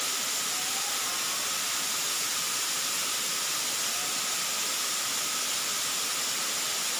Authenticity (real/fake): real